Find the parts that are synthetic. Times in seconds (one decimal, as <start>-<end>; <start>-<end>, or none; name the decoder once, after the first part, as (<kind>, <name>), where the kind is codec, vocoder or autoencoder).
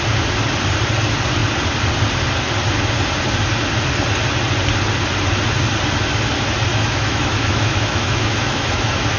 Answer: 6.7-9.2 (autoencoder, DAC-VAE)